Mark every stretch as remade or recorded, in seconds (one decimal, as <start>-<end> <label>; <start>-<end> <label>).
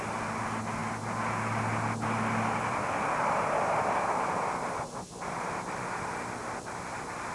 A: 0.0-7.3 recorded